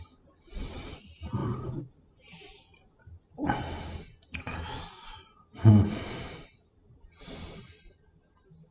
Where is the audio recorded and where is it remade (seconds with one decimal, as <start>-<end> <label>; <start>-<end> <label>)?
0.0-8.7 recorded